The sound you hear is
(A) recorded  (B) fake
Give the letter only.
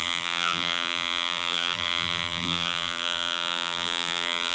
B